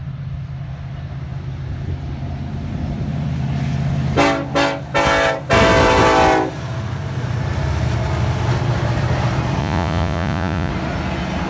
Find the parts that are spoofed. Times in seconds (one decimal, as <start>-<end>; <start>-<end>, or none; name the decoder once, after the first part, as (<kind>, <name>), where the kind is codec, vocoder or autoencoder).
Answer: 9.6-10.7 (vocoder, Vocos)